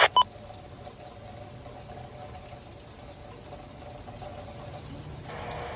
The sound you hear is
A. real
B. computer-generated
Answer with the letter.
A